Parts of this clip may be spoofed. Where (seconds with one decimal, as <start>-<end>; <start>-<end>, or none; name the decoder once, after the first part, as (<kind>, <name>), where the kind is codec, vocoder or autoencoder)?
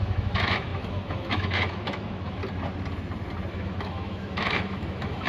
0.0-2.4 (autoencoder, DAC-VAE); 3.5-5.3